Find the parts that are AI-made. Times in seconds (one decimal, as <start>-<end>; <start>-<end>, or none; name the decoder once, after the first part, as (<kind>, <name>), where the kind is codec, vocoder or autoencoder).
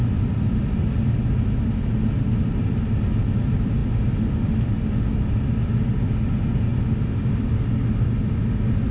none